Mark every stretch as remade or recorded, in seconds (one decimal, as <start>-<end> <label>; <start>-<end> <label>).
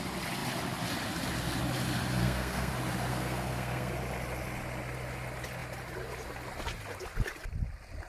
0.0-2.2 recorded; 2.2-2.7 remade; 2.7-3.1 recorded; 3.1-3.9 remade; 3.9-8.1 recorded